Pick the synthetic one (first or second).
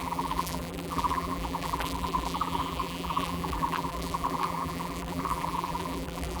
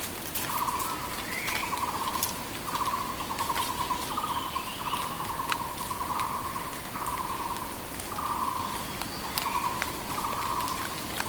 first